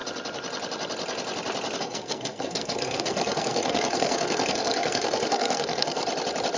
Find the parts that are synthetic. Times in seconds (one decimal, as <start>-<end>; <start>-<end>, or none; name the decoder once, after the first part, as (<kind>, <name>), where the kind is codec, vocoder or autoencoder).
1.8-6.0 (codec, SNAC)